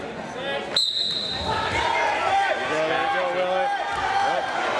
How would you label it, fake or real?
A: real